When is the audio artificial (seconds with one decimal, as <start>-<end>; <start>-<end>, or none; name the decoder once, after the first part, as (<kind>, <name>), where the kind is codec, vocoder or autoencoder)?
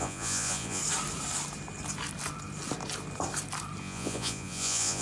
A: 0.0-0.8 (vocoder, Vocos); 3.8-5.0